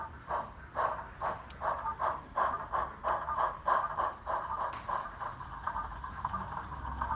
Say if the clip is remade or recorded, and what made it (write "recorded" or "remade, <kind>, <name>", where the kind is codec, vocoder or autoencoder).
recorded